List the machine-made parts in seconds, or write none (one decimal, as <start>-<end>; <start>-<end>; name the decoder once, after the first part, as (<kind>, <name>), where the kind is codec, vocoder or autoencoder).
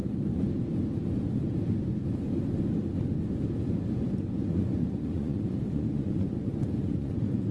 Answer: 4.5-7.5 (vocoder, Vocos)